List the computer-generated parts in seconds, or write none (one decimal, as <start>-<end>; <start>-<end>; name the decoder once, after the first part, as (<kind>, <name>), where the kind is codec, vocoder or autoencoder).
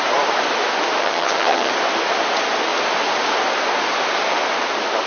1.0-1.7 (vocoder, HiFi-GAN)